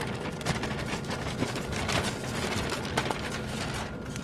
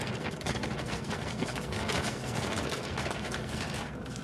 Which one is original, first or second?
first